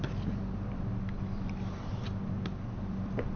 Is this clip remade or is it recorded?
remade